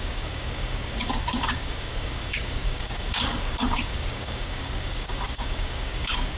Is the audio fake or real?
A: fake